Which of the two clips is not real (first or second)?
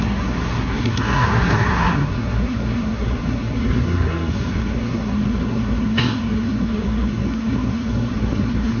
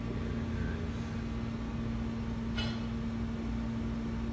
first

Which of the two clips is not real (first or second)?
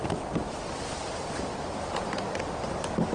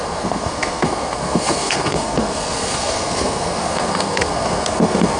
second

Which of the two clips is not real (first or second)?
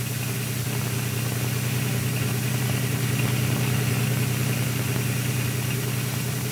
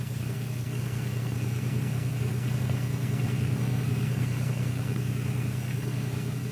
second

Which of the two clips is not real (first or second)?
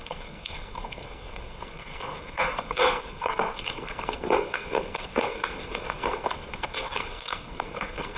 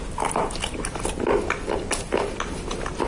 first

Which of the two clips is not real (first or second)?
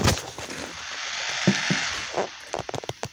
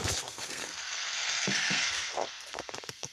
second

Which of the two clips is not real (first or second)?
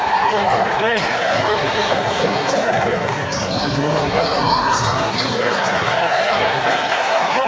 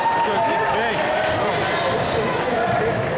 first